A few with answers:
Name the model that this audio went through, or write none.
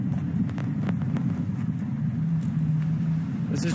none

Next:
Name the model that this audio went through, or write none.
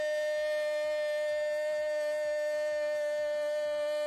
none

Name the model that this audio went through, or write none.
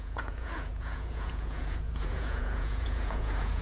vocoder, Vocos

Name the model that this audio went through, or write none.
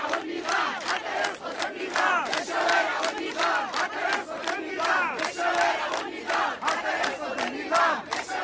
none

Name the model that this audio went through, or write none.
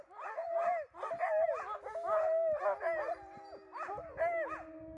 none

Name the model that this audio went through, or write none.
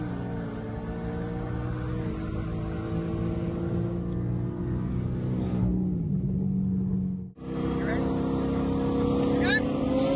none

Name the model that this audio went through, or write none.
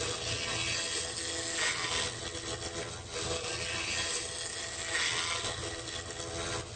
none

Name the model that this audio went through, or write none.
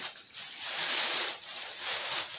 vocoder, BigVGAN v2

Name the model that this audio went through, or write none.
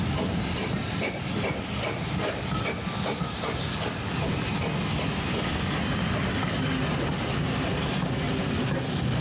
none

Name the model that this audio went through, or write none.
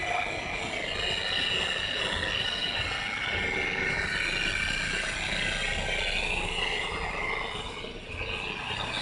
none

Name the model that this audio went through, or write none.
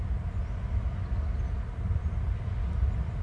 none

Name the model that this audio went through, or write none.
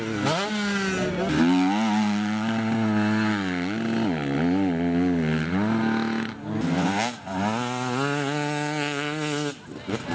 none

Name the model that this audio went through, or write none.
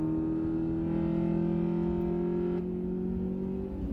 none